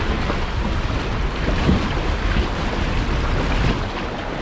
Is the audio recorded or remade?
recorded